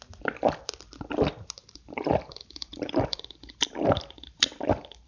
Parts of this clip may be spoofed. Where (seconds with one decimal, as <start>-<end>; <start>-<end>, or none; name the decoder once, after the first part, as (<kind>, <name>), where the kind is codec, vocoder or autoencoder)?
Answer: 1.6-5.1 (vocoder, BigVGAN v2)